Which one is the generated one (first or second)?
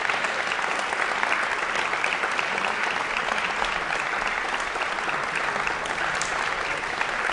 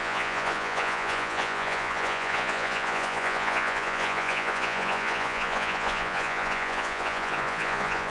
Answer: second